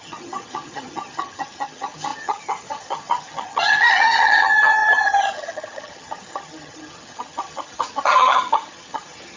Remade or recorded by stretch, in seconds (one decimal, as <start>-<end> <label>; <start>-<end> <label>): 0.0-9.4 remade